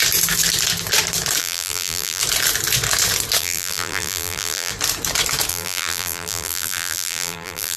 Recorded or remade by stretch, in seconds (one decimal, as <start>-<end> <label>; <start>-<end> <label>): 0.0-1.4 recorded; 1.4-2.2 remade; 2.2-3.4 recorded; 3.4-4.7 remade; 4.7-5.5 recorded; 5.5-7.8 remade